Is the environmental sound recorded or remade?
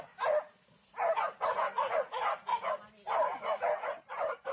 recorded